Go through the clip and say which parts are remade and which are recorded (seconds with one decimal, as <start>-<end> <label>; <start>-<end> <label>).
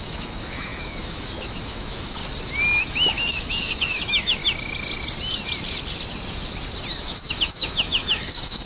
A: 0.0-2.2 remade; 2.2-2.8 recorded; 2.8-4.4 remade; 4.4-7.0 recorded; 7.0-8.7 remade